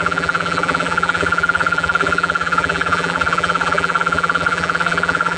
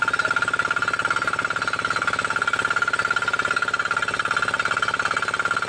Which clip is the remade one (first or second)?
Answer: first